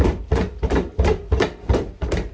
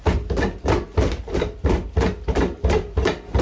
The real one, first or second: second